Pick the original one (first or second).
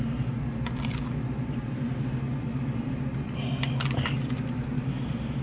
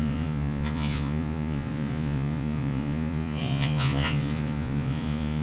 first